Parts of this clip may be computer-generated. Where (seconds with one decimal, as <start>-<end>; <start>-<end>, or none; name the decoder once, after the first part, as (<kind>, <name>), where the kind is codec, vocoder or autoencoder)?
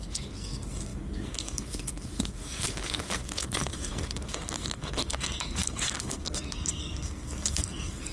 0.0-8.1 (codec, SNAC)